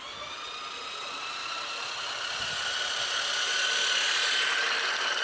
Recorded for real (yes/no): yes